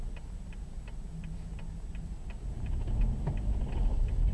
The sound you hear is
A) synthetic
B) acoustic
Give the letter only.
B